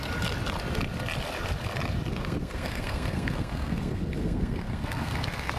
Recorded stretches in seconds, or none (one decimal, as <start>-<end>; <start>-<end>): 0.0-2.1